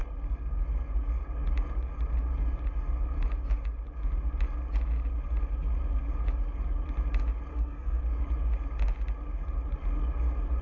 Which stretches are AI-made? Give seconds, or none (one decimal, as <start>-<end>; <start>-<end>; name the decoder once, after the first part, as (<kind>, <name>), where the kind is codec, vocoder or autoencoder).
7.5-8.0 (codec, SNAC)